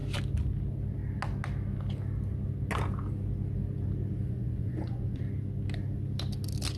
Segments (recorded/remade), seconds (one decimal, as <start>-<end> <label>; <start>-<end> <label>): 0.0-4.2 recorded; 4.2-5.2 remade; 5.2-6.8 recorded